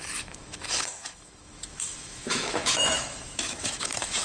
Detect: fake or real fake